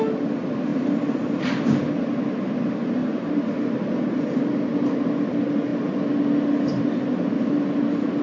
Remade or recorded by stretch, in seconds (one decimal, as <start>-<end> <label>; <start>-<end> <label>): 0.0-3.0 recorded; 3.0-3.5 remade; 3.5-8.2 recorded